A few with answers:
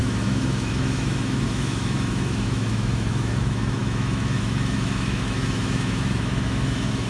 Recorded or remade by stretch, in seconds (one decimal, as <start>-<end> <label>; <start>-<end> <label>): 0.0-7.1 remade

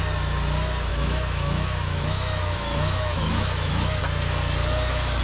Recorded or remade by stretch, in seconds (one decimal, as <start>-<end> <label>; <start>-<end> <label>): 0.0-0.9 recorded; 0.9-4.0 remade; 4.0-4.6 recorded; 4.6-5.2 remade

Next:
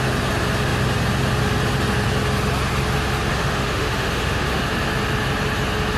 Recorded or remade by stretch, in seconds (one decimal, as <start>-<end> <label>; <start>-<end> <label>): 0.0-3.3 recorded; 3.3-4.6 remade; 4.6-6.0 recorded

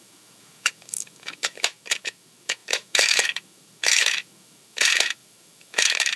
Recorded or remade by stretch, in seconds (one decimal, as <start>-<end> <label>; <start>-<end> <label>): 0.0-6.2 remade